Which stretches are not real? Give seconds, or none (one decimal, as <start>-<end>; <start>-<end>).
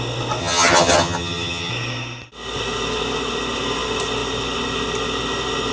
0.4-1.7